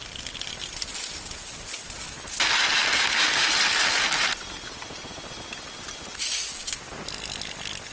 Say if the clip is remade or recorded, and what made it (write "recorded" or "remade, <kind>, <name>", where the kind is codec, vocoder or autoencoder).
recorded